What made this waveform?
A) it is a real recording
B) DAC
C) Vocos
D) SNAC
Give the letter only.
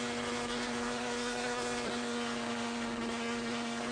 D